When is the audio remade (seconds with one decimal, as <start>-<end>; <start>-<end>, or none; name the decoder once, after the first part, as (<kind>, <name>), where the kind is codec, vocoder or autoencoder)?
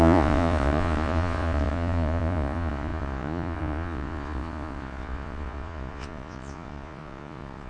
0.0-7.7 (vocoder, Vocos)